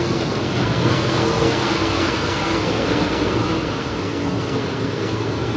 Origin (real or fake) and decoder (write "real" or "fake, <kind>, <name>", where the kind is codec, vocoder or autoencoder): fake, codec, SNAC